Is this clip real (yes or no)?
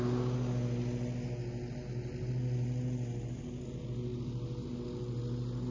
yes